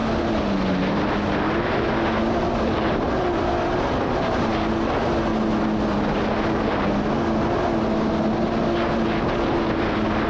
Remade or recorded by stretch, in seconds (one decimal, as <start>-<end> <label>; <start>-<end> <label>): 0.0-2.4 recorded; 2.4-3.7 remade; 3.7-10.3 recorded